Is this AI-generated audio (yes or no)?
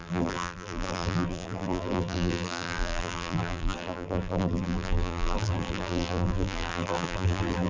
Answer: yes